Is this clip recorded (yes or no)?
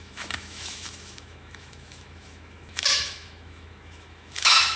no